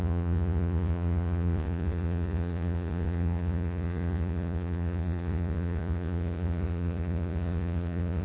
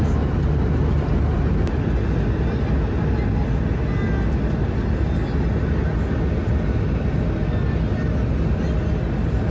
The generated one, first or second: first